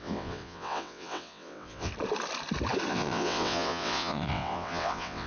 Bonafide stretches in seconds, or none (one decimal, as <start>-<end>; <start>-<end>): 1.9-2.9